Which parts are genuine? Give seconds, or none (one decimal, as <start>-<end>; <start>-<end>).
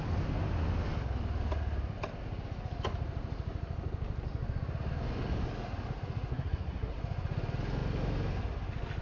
0.0-6.3; 7.0-9.0